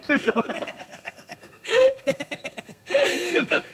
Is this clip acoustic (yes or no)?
no